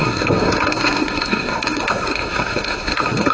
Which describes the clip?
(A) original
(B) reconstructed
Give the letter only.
B